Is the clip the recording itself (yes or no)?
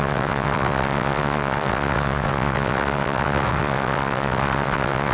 no